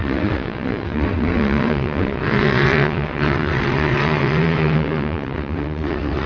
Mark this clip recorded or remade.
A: remade